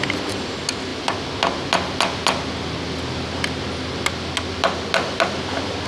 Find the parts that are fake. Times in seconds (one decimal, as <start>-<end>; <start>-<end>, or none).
none